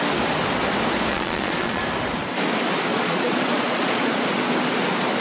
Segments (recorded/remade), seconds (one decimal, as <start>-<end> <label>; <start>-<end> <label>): 0.0-1.1 recorded; 1.1-1.8 remade; 1.8-2.9 recorded; 2.9-4.5 remade; 4.5-5.2 recorded